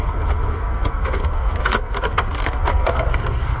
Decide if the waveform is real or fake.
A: fake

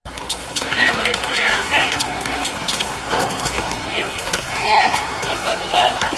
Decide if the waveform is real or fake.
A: fake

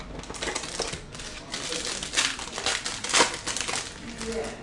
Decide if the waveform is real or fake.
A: real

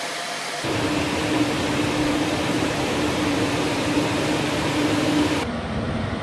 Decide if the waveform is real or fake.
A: fake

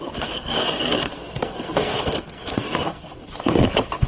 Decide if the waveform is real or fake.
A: fake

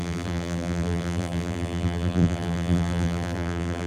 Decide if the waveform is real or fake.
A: fake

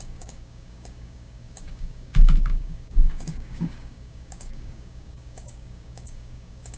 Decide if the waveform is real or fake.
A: fake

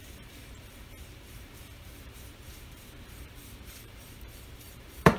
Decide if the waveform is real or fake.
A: fake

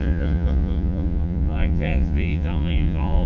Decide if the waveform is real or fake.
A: fake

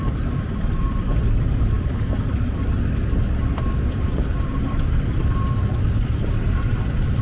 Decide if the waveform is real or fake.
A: fake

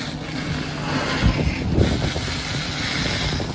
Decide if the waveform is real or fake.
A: real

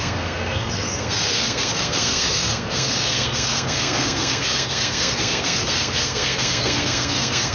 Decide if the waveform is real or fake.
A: fake